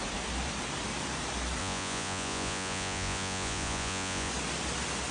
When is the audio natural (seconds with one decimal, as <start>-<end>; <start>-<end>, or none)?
0.0-1.6; 4.3-5.1

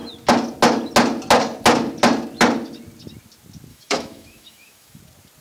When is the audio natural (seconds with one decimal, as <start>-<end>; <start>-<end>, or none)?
0.0-3.7; 5.0-5.4

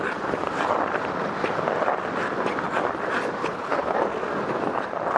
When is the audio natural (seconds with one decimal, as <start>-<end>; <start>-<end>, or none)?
0.0-3.4; 4.0-5.2

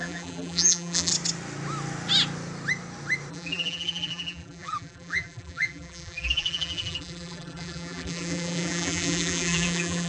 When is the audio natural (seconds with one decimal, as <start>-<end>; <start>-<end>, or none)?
1.1-3.3

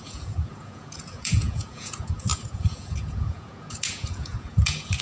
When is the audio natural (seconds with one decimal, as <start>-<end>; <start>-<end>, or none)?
none

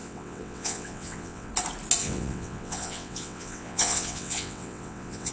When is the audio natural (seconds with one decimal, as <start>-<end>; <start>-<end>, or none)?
1.5-2.0

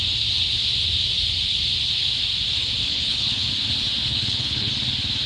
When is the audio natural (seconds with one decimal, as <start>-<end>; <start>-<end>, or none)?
0.0-2.8; 3.5-4.0; 4.7-5.3